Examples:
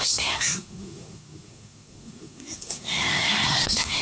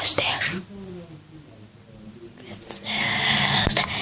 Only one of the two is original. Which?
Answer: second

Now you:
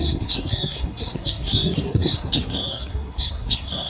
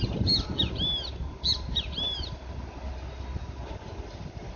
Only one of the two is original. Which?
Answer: second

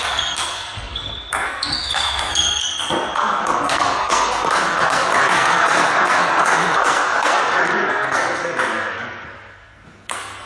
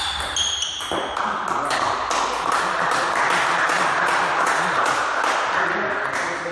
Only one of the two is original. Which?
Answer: second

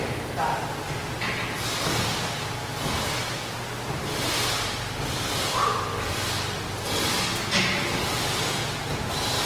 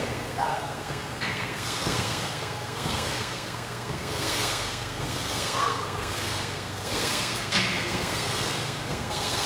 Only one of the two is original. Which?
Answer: first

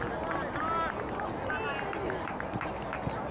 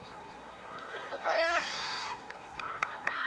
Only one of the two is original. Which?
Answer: first